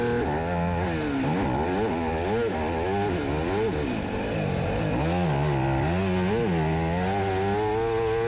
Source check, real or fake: real